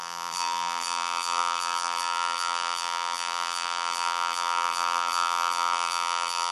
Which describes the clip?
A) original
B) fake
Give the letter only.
B